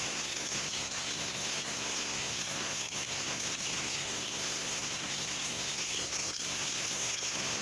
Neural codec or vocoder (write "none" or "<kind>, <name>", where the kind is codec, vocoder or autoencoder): codec, SNAC